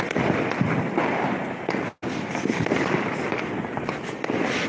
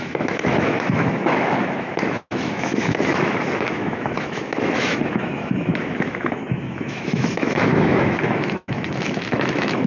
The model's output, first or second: second